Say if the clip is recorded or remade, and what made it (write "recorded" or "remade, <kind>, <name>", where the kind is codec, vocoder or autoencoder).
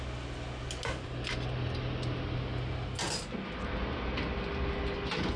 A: recorded